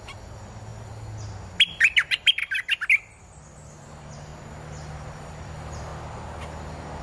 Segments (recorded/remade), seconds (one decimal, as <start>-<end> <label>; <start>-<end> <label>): 0.0-0.7 remade; 0.7-1.8 recorded; 1.8-2.4 remade; 2.4-3.2 recorded; 3.2-4.3 remade; 4.3-5.2 recorded; 5.2-5.9 remade; 5.9-7.0 recorded

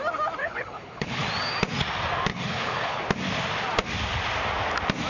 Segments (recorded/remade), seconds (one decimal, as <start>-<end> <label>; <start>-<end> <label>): 0.0-0.4 recorded; 0.4-1.2 remade; 1.2-2.3 recorded; 2.3-3.0 remade; 3.0-5.1 recorded

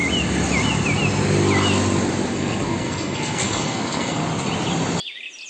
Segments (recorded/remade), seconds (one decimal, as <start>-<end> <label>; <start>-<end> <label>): 0.0-2.3 recorded; 2.3-4.2 remade; 4.2-5.5 recorded

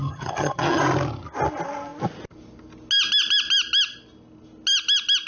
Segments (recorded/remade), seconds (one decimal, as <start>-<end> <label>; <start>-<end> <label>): 0.0-0.8 remade; 0.8-5.3 recorded

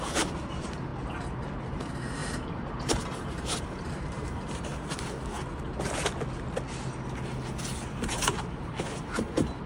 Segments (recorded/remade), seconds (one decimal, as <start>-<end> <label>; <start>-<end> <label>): 0.0-0.9 remade; 0.9-1.6 recorded; 1.6-4.7 remade; 4.7-8.0 recorded; 8.0-9.7 remade